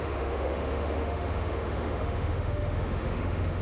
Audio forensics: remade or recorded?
remade